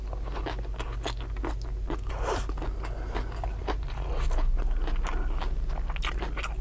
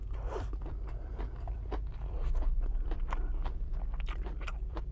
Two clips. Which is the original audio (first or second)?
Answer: first